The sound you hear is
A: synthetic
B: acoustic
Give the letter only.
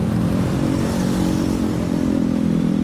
A